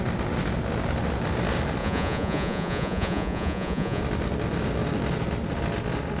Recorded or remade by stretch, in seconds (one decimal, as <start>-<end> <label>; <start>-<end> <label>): 0.0-1.8 recorded; 1.8-4.0 remade; 4.0-6.2 recorded